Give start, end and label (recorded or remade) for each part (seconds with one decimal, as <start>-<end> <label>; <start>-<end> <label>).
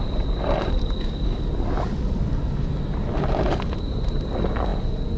0.0-5.2 recorded